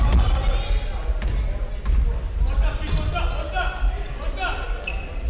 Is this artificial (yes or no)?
no